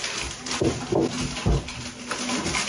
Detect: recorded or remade recorded